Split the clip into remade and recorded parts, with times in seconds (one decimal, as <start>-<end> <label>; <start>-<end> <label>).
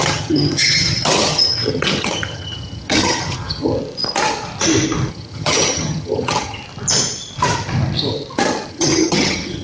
0.0-3.7 remade; 3.7-5.1 recorded; 5.1-6.6 remade; 6.6-8.7 recorded; 8.7-9.6 remade